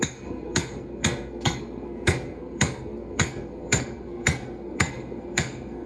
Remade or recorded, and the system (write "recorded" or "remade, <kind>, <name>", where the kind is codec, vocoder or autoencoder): remade, codec, SNAC